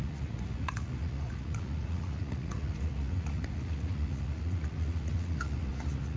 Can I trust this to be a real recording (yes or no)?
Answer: no